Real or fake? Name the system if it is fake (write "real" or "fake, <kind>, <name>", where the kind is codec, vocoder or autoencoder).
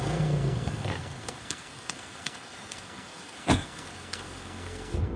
fake, codec, SNAC